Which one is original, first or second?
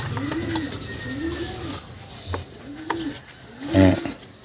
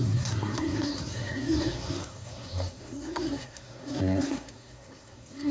first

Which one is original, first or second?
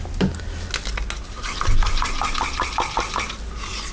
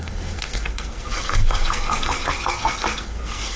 first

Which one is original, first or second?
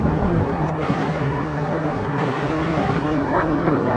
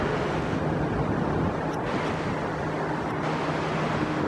second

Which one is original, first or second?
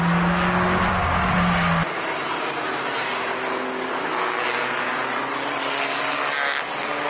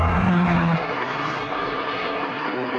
first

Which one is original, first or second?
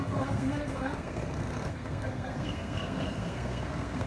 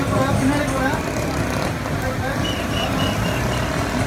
second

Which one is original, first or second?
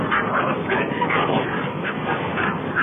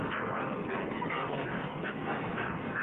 first